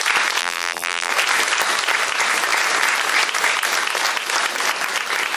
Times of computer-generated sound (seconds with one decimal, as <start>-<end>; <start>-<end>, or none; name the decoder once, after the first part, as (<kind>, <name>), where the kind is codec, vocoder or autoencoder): 0.4-1.1 (vocoder, BigVGAN v2)